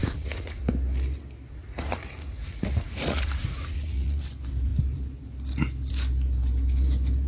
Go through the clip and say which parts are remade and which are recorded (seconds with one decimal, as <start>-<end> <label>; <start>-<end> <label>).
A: 0.0-0.6 remade; 0.6-1.5 recorded; 1.5-4.2 remade; 4.2-7.3 recorded